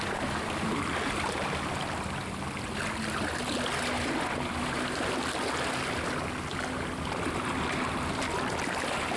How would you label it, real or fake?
real